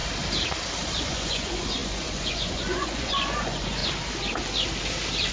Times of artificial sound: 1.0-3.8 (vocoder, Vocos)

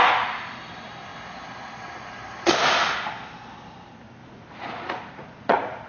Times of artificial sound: 4.2-5.9 (vocoder, Vocos)

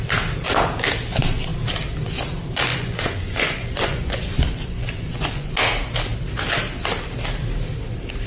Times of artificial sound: 2.7-5.5 (vocoder, Vocos)

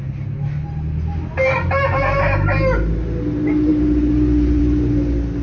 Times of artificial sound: none

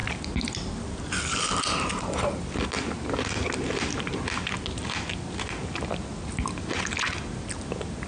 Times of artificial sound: none

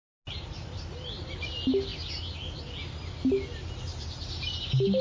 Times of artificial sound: none

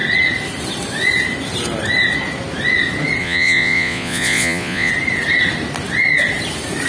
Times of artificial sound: 3.2-4.9 (vocoder, Vocos)